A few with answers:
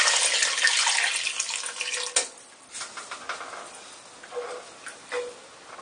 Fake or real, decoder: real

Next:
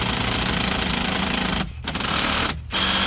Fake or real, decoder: real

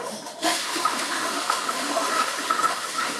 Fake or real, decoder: fake, autoencoder, DAC-VAE